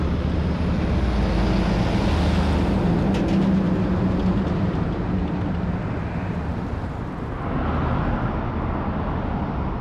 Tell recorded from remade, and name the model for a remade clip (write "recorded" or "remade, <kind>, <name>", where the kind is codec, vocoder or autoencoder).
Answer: recorded